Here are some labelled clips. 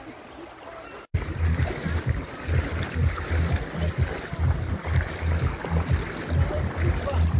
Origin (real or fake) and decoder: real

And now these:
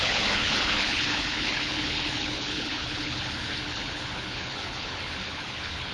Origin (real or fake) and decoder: fake, codec, HILCodec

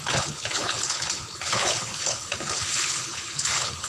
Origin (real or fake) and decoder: fake, codec, HILCodec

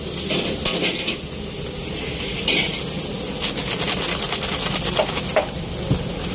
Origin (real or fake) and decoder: real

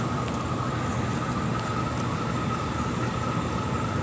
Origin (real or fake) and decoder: real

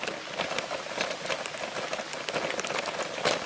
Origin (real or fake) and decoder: real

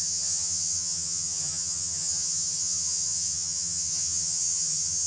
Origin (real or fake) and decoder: fake, vocoder, HiFi-GAN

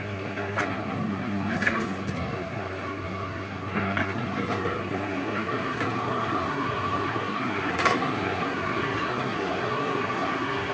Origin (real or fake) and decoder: fake, codec, SNAC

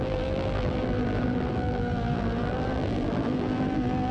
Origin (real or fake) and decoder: fake, vocoder, BigVGAN v2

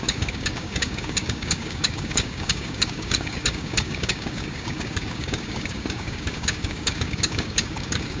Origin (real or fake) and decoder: fake, codec, DAC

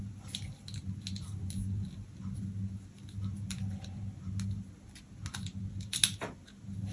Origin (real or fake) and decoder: real